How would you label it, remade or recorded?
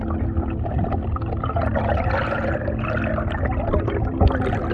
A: recorded